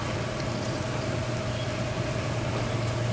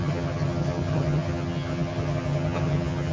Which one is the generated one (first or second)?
second